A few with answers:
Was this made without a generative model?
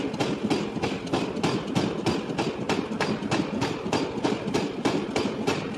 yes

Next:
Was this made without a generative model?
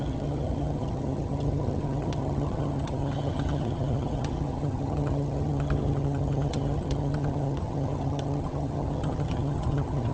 no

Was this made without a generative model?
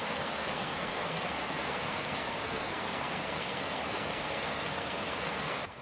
no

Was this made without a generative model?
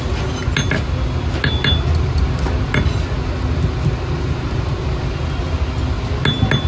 yes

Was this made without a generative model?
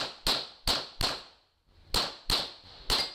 yes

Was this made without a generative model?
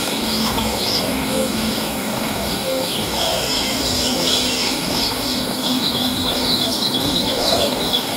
no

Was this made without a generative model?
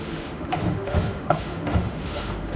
no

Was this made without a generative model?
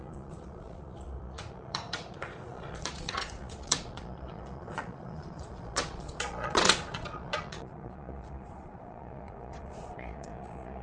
no